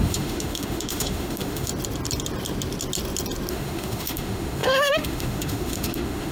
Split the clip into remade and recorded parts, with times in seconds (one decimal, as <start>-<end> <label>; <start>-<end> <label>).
0.0-1.7 remade; 1.7-3.5 recorded; 3.5-6.3 remade